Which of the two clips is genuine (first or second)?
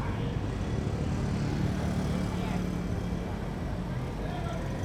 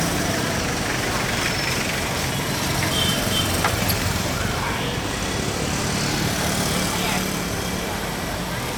first